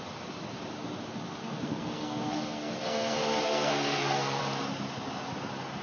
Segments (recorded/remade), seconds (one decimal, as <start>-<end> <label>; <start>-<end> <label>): 0.0-1.4 recorded; 1.4-4.4 remade; 4.4-5.8 recorded